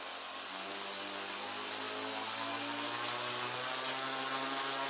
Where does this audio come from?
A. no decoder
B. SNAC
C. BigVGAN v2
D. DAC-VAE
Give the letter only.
A